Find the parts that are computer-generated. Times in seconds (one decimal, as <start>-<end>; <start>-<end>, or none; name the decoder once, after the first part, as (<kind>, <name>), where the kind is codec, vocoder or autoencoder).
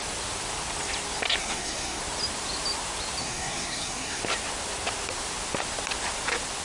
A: 1.4-2.0 (codec, SNAC); 3.2-4.2